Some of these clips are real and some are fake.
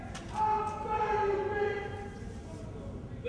real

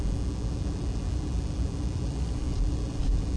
real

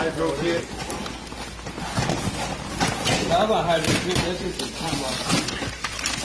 real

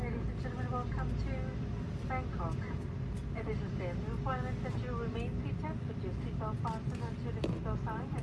real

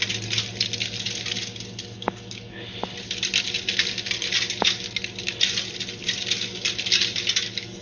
real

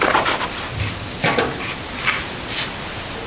fake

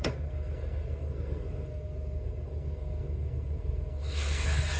fake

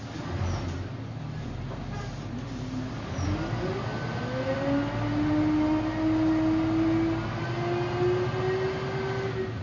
real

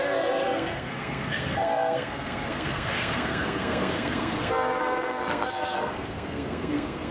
fake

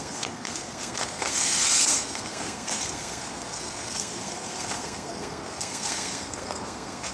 fake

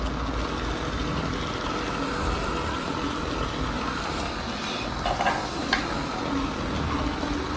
real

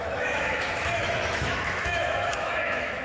fake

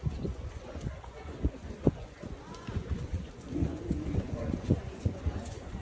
fake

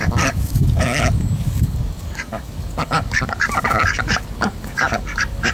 fake